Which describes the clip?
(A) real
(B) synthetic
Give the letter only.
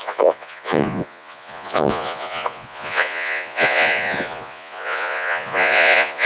B